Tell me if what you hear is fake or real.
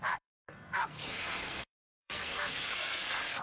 fake